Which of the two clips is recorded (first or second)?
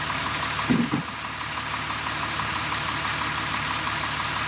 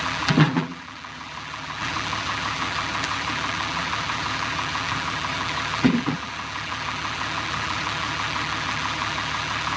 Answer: first